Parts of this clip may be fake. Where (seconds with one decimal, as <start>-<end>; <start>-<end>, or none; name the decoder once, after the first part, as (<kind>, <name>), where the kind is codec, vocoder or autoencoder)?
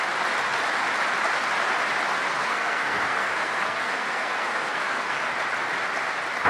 2.3-5.3 (codec, SNAC)